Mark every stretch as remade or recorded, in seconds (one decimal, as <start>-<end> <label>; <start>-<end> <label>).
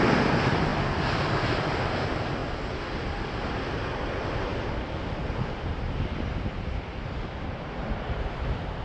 0.0-0.7 remade; 0.7-1.3 recorded; 1.3-4.5 remade; 4.5-6.6 recorded; 6.6-8.8 remade